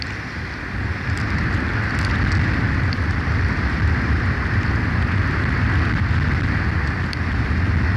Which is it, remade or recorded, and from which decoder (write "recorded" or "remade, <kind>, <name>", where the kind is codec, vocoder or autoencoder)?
recorded